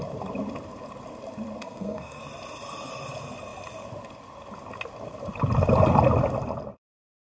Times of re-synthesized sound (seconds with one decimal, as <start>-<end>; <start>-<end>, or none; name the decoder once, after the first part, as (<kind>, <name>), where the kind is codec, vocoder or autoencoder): 1.6-2.2 (codec, SNAC)